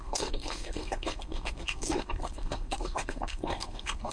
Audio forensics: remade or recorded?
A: remade